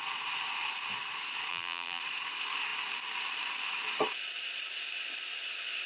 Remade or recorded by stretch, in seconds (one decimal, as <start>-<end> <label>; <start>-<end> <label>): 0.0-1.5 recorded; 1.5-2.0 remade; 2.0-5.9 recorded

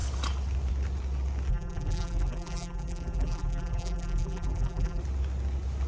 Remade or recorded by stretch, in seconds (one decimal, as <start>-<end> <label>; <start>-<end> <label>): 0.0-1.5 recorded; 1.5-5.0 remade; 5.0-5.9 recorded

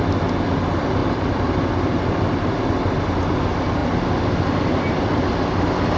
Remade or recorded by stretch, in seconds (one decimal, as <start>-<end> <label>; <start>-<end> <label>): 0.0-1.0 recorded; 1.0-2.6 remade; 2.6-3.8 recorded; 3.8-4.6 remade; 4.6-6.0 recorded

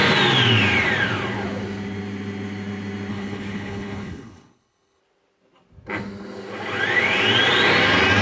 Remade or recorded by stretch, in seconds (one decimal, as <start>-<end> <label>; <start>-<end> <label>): 0.0-3.1 recorded; 3.1-5.0 remade; 5.0-8.2 recorded

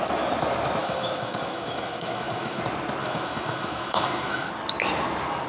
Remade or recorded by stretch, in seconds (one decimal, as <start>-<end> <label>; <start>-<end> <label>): 0.0-0.8 recorded; 0.8-2.6 remade; 2.6-3.0 recorded; 3.0-4.5 remade; 4.5-5.5 recorded

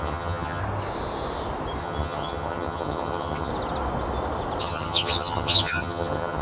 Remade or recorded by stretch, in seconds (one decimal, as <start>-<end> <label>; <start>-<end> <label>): 0.0-0.6 remade; 0.6-1.8 recorded; 1.8-3.5 remade; 3.5-4.6 recorded; 4.6-6.4 remade

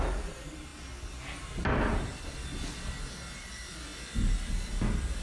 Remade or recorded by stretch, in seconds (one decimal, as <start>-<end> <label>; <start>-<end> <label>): 0.0-0.7 remade; 0.7-3.4 recorded; 3.4-5.2 remade

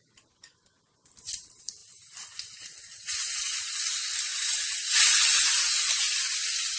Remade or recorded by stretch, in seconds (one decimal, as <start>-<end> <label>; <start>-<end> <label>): 0.0-6.8 recorded